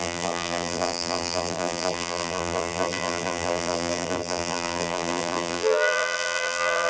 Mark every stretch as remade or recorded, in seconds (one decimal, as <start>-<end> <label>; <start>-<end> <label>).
0.0-6.9 remade